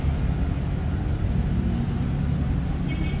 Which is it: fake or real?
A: real